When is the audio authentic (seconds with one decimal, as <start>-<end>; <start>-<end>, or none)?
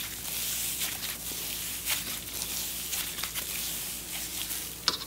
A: 0.0-5.1